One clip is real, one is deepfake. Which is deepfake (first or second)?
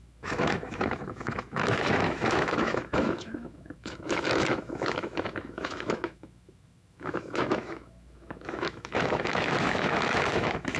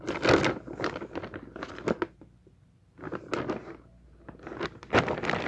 first